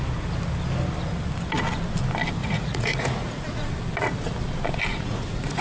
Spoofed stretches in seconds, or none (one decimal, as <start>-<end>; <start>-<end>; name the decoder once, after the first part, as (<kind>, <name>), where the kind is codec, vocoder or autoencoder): 2.4-3.7 (vocoder, Vocos); 4.9-5.6